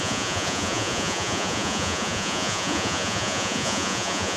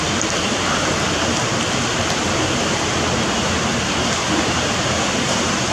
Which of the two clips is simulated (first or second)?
first